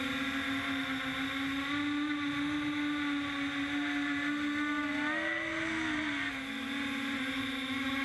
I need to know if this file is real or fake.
real